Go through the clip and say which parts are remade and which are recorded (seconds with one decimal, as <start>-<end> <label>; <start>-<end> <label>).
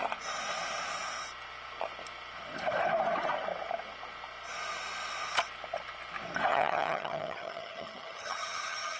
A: 0.0-6.5 recorded; 6.5-9.0 remade